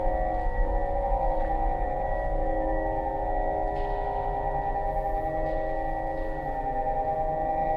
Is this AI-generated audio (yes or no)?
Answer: no